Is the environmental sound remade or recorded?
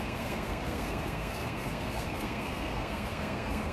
remade